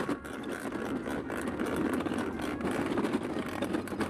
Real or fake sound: fake